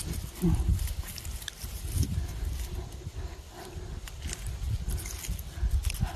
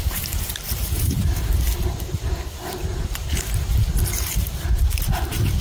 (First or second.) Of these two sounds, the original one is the first